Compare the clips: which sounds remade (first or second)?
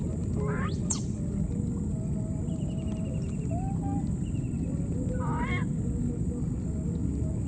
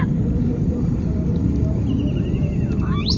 second